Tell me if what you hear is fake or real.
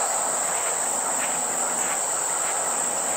real